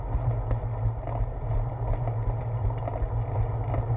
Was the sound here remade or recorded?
recorded